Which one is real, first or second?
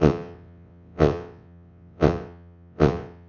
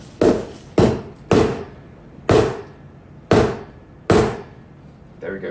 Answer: second